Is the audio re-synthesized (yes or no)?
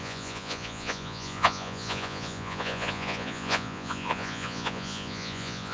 yes